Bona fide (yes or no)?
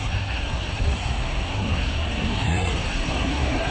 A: no